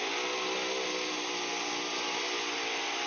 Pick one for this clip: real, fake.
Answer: real